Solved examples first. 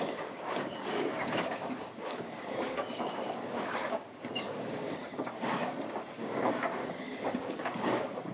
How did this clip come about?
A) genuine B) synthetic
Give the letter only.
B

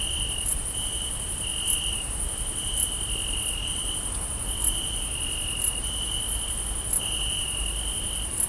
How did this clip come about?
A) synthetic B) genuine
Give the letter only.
B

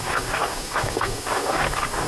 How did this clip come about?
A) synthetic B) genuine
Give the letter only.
A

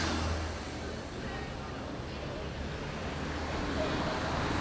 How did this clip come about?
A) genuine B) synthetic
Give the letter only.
A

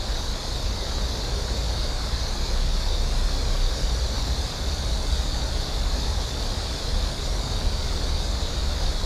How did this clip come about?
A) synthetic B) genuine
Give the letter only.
A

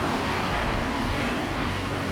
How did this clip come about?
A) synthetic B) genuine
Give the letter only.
A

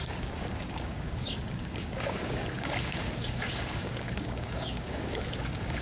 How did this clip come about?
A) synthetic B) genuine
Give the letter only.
A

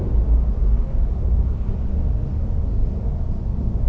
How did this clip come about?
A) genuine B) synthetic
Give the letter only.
A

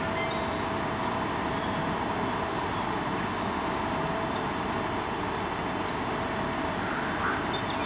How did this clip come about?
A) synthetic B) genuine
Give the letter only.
B